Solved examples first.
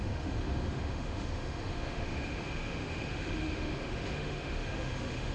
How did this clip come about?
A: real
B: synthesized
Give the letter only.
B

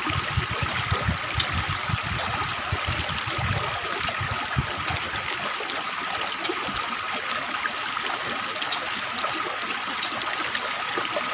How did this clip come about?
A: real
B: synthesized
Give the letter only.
A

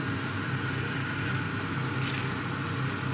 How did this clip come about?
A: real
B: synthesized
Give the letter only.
A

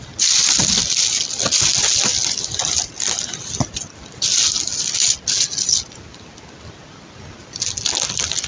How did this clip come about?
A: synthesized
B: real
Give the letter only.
B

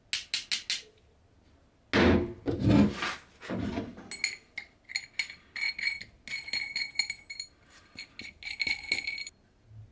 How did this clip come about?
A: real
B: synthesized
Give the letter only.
A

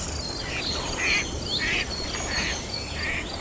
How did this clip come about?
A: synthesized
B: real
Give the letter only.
B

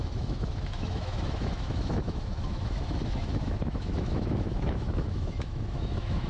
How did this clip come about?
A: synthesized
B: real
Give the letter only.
A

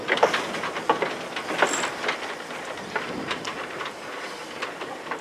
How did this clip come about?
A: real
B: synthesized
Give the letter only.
A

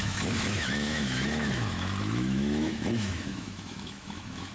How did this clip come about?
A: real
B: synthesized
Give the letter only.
B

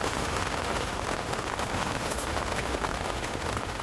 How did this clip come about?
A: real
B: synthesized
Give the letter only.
B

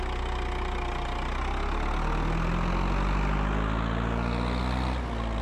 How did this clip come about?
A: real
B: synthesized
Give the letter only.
A